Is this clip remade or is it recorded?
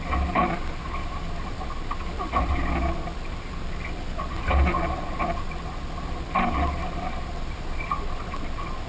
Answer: recorded